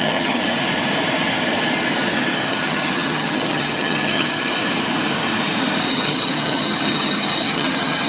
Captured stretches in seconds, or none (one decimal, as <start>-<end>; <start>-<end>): 0.4-2.5; 4.5-5.9